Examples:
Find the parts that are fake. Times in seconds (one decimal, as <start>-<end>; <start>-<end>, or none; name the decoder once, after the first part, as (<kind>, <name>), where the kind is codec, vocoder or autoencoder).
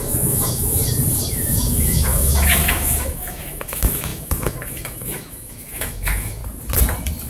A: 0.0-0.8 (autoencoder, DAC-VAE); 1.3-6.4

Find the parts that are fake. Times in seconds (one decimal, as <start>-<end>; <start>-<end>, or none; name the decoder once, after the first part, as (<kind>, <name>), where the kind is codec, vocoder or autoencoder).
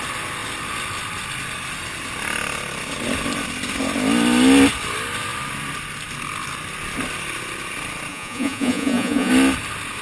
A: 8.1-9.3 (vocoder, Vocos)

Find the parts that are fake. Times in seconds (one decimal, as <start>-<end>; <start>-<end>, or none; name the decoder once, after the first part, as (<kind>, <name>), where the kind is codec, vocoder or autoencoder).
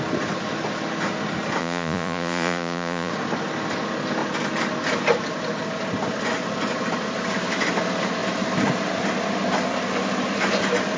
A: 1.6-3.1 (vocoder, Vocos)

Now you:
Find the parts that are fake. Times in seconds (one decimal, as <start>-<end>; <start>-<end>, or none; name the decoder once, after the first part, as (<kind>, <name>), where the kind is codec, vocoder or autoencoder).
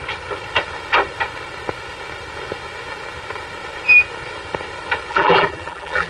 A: 5.1-6.1 (vocoder, BigVGAN v2)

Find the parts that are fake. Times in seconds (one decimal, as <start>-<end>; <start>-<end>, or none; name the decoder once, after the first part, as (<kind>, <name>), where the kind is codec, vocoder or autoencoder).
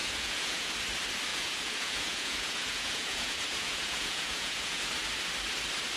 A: 0.0-0.7 (vocoder, Vocos); 1.3-4.9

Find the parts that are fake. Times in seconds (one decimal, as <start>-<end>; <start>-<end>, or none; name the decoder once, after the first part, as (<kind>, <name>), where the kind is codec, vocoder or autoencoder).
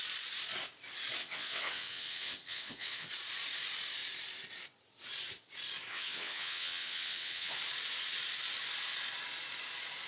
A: 1.2-3.1 (vocoder, WaveNeXt); 5.9-7.6